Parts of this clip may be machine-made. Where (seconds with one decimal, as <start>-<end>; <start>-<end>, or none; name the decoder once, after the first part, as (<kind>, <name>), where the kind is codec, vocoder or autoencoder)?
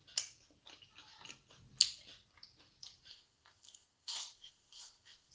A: 3.1-5.3 (codec, ZipCodec)